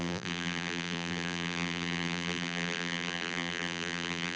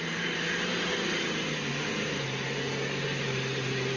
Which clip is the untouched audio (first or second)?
second